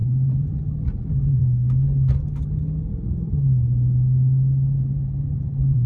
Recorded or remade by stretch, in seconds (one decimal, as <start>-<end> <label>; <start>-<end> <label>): 0.0-1.4 remade; 1.4-4.8 recorded; 4.8-5.9 remade